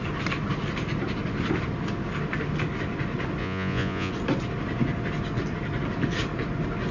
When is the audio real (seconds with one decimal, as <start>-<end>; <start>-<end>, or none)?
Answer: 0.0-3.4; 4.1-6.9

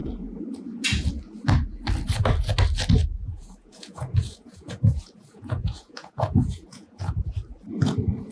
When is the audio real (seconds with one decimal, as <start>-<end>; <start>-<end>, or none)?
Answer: 0.0-3.2; 7.1-8.3

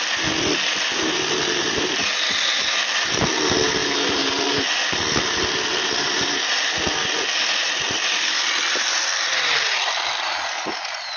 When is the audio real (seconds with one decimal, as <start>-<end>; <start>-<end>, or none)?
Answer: 0.0-11.2

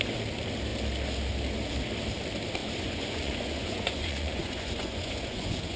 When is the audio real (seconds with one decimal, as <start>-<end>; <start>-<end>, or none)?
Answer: 0.0-2.6

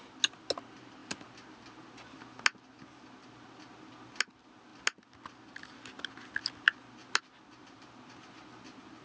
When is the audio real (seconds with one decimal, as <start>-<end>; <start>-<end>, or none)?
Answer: 0.0-9.0

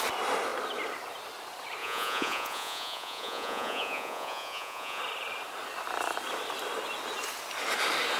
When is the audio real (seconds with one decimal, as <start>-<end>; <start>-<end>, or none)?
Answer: 0.0-1.8; 5.0-8.2

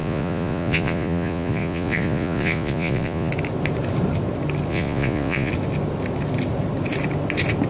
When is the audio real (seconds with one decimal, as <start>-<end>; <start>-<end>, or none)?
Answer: 3.3-4.7; 5.5-7.7